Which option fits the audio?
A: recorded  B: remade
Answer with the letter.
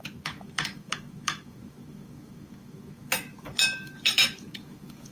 B